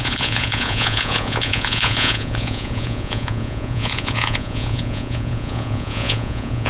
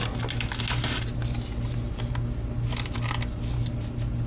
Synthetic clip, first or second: first